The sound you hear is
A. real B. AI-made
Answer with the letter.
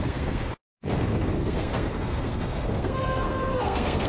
B